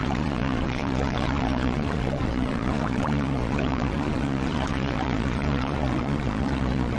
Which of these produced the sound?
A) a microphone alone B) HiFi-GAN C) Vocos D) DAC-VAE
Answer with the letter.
C